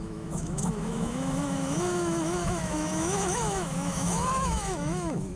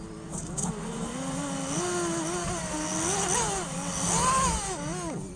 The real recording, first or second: second